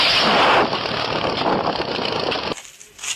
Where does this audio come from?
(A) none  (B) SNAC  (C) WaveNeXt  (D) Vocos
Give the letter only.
A